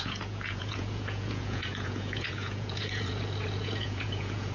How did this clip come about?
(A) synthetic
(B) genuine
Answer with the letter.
A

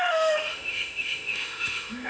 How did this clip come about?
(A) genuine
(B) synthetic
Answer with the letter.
B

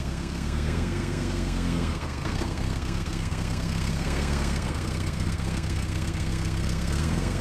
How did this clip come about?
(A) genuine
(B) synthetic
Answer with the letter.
B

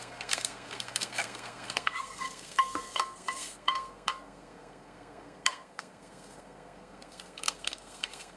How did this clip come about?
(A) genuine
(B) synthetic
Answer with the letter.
B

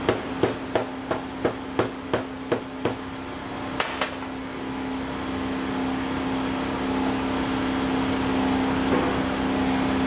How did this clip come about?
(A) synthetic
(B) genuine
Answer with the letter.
B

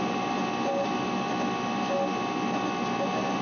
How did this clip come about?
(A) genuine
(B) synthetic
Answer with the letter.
A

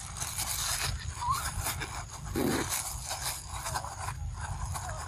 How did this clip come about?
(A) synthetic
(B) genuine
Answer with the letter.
B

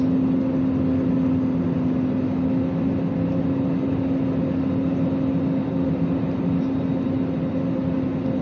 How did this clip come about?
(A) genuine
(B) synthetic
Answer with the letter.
A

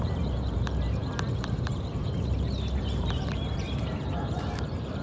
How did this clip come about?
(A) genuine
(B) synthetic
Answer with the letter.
B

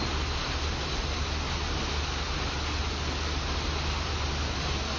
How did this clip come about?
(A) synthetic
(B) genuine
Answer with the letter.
B